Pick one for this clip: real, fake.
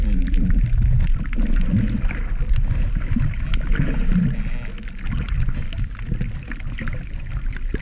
real